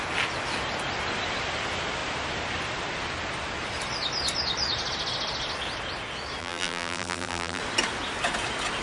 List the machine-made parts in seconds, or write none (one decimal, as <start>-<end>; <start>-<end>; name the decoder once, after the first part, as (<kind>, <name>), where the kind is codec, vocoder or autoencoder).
6.4-7.6 (vocoder, BigVGAN v2)